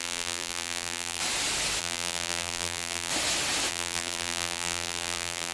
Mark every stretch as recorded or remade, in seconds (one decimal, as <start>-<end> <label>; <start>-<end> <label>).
0.0-1.2 remade; 1.2-1.8 recorded; 1.8-3.1 remade; 3.1-3.7 recorded; 3.7-5.5 remade

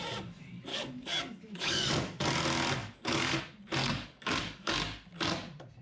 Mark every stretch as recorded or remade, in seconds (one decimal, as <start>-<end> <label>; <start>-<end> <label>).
0.0-0.7 recorded; 0.7-2.2 remade; 2.2-2.8 recorded; 2.8-3.4 remade; 3.4-3.8 recorded; 3.8-4.7 remade; 4.7-5.8 recorded